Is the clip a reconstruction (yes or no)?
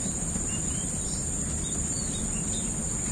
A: no